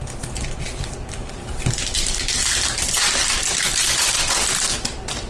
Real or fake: real